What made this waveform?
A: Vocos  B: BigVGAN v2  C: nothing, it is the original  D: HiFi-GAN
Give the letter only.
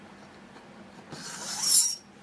C